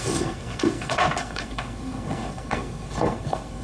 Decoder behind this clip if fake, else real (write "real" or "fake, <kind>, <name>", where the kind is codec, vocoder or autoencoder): fake, codec, SNAC